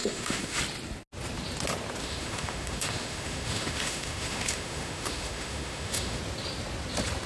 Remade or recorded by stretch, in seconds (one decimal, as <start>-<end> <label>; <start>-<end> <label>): 0.0-0.6 remade; 0.6-2.0 recorded; 2.0-6.2 remade; 6.2-7.3 recorded